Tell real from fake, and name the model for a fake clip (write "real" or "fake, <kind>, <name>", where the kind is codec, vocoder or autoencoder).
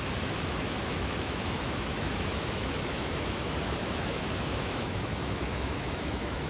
fake, autoencoder, DAC-VAE